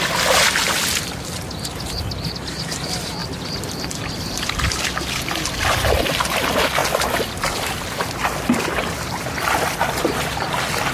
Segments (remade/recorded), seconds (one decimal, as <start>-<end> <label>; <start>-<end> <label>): 0.0-10.9 recorded